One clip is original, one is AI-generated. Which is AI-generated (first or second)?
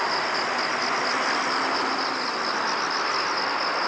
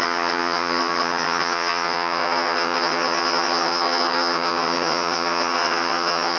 second